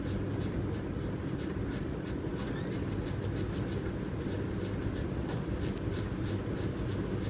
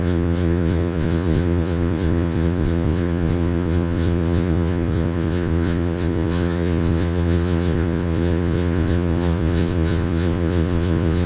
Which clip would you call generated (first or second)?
second